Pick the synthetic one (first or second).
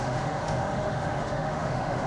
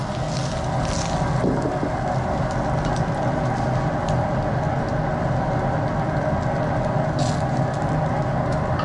first